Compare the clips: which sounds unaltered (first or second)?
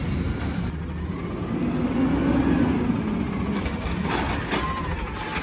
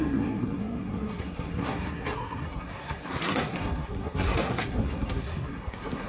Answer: first